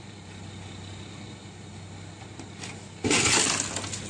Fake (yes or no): no